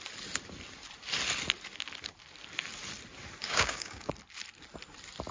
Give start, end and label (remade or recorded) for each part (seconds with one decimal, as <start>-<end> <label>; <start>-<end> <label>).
0.0-3.4 recorded; 3.4-4.1 remade; 4.1-5.3 recorded